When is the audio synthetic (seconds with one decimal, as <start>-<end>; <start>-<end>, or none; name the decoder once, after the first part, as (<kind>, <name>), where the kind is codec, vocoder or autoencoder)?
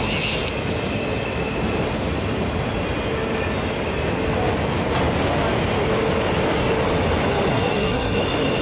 7.5-8.2 (codec, SNAC)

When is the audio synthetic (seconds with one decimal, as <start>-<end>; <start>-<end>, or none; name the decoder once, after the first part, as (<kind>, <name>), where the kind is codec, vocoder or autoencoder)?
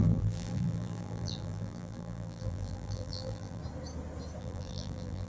0.0-3.6 (vocoder, BigVGAN v2); 4.4-5.3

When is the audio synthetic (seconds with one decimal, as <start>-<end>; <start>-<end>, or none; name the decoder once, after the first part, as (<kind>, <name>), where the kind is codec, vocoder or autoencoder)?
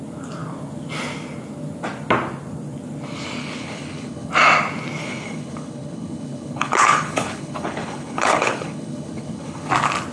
3.4-4.3 (codec, HILCodec); 5.0-9.7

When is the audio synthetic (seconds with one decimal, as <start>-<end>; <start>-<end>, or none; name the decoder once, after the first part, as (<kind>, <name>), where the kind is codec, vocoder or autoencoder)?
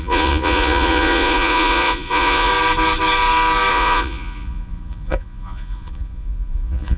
0.0-2.5 (vocoder, Vocos); 3.7-7.0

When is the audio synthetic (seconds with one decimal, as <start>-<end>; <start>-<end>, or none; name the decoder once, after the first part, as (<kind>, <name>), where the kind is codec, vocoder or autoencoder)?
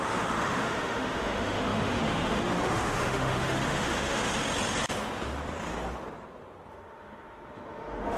0.0-4.3 (autoencoder, DAC-VAE); 6.7-8.2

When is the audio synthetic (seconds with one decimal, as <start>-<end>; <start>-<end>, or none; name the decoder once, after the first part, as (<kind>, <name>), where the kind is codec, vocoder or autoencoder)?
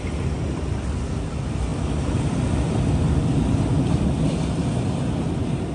none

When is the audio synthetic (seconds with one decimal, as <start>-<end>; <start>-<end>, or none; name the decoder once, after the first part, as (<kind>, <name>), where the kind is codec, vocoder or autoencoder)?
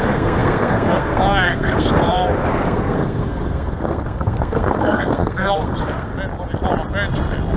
0.0-6.1 (codec, SNAC)